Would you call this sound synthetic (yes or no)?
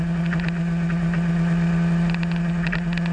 no